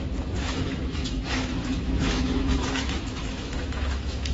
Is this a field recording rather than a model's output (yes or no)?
no